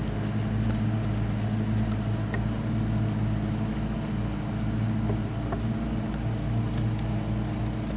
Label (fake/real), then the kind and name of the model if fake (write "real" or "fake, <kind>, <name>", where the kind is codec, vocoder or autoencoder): real